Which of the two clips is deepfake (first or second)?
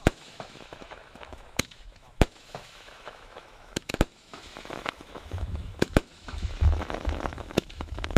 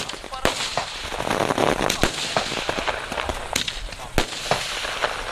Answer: first